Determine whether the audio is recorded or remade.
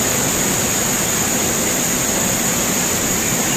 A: recorded